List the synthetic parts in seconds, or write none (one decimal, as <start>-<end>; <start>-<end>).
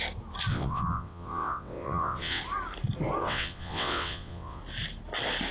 0.5-2.4; 3.2-4.6